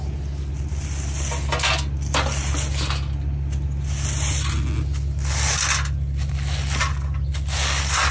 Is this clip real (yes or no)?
yes